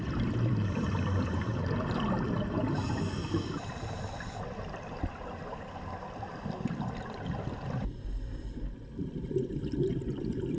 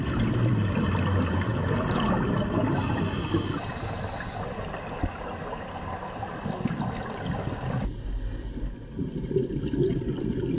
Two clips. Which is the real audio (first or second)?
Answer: second